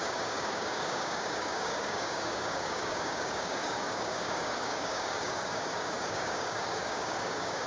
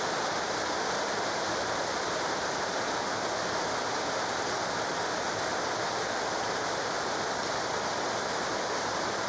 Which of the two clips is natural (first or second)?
second